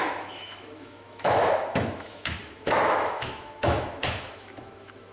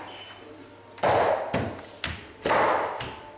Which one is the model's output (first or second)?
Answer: first